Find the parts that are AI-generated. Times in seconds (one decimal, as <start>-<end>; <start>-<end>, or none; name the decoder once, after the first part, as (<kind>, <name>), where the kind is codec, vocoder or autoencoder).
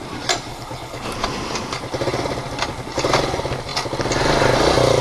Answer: 0.5-1.1 (codec, HILCodec)